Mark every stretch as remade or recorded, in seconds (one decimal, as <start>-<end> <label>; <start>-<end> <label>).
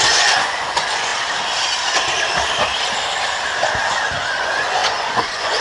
0.0-1.1 remade; 1.1-3.9 recorded; 3.9-5.6 remade